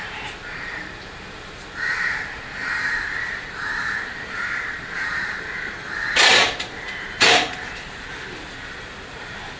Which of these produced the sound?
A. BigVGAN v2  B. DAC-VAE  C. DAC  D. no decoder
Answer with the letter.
A